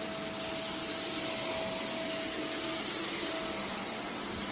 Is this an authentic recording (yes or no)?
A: yes